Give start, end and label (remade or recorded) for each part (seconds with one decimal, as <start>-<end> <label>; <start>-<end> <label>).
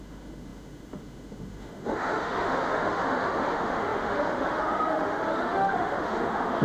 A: 0.0-6.6 remade